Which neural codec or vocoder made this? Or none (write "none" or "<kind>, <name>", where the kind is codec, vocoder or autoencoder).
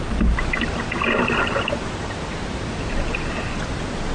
none